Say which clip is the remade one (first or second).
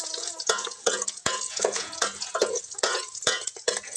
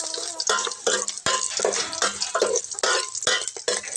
first